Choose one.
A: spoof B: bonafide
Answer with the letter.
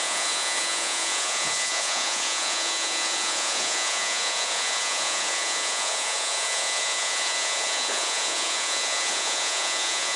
A